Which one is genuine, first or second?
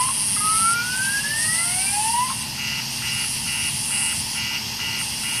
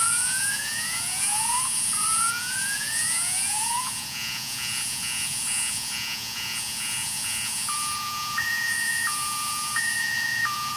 first